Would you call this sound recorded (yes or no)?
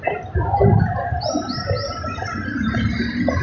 yes